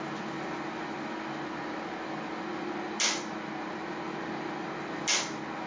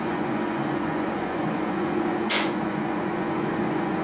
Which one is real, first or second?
first